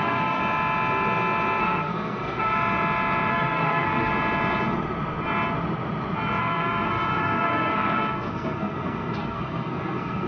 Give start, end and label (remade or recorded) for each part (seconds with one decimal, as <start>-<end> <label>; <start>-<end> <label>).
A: 0.0-0.4 remade; 0.4-1.6 recorded; 1.6-2.5 remade; 2.5-3.3 recorded; 3.3-4.1 remade; 4.1-6.4 recorded; 6.4-10.3 remade